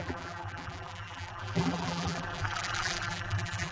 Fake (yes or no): yes